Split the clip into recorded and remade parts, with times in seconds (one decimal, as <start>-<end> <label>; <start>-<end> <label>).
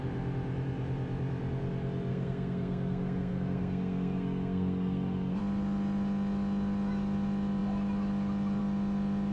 0.0-2.1 recorded; 2.1-5.4 remade; 5.4-9.3 recorded